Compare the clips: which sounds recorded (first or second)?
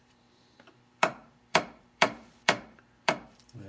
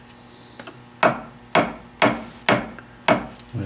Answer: second